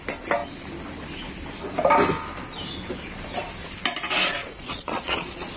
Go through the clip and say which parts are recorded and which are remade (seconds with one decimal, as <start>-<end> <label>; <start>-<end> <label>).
0.0-4.4 recorded; 4.4-5.6 remade